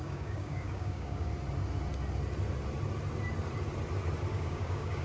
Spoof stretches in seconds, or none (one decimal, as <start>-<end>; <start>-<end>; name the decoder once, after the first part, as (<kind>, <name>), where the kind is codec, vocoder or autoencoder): 0.0-1.3 (codec, DAC); 4.3-5.0

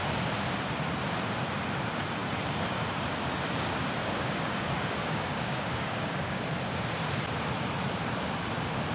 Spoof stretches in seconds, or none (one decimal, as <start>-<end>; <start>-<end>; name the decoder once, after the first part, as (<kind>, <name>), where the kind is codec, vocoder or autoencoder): 4.0-6.4 (codec, DAC)